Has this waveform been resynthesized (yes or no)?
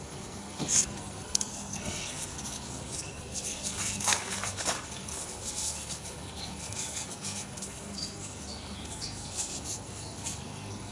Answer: yes